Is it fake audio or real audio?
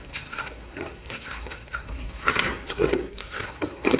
fake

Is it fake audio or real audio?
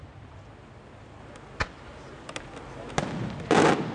real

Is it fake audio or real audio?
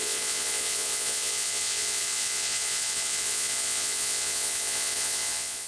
fake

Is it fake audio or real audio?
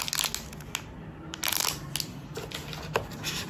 real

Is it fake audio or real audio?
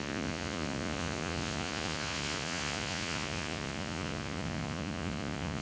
fake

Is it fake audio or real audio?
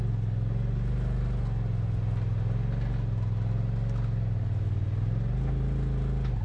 real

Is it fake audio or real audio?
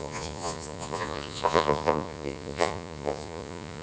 fake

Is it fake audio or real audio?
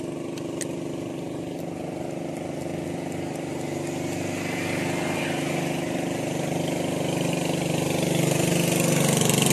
real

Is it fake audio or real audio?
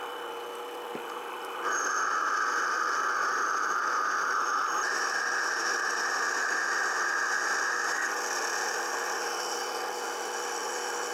real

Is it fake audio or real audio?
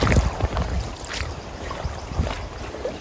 real